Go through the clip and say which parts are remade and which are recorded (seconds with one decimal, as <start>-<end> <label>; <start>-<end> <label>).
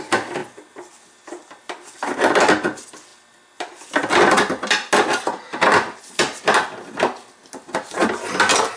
0.0-8.8 recorded